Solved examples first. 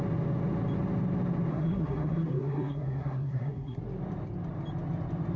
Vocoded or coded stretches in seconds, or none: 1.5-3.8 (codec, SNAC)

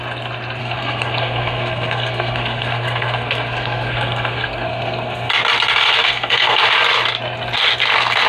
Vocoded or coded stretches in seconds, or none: 0.6-5.3 (codec, SNAC); 6.0-6.6